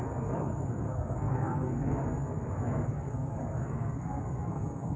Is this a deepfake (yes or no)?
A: yes